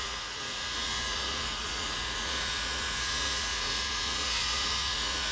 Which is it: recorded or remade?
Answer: remade